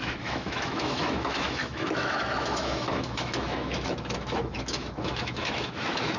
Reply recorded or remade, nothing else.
remade